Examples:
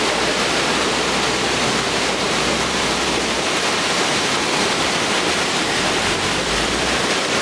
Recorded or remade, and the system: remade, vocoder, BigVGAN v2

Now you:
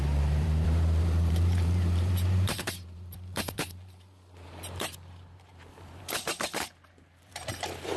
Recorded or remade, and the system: remade, vocoder, BigVGAN v2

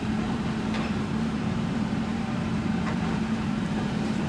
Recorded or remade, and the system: remade, vocoder, BigVGAN v2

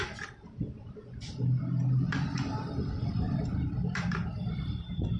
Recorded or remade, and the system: remade, vocoder, BigVGAN v2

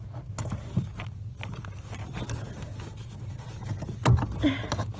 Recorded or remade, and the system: recorded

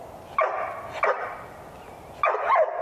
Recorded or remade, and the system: recorded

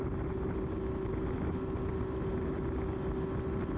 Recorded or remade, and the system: recorded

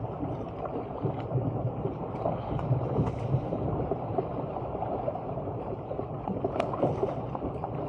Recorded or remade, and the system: remade, vocoder, BigVGAN v2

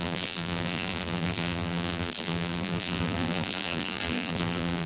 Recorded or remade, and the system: remade, vocoder, BigVGAN v2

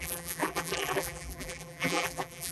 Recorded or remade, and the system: remade, vocoder, BigVGAN v2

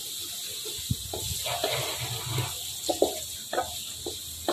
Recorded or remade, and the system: recorded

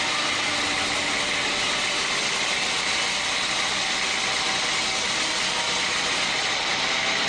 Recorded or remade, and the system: recorded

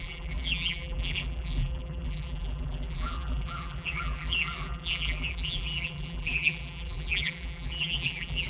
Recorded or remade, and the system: remade, vocoder, BigVGAN v2